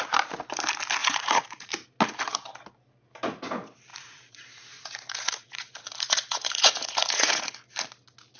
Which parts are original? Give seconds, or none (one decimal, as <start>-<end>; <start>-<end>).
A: 0.0-1.0; 1.7-3.9; 7.5-8.4